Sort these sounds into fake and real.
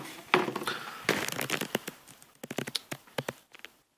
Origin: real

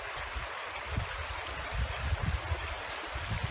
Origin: real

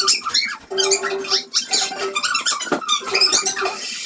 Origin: real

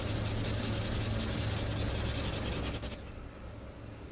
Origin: real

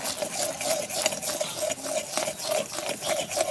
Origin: real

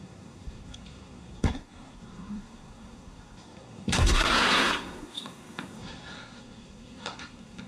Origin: fake